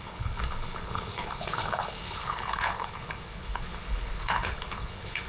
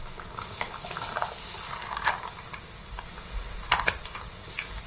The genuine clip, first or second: second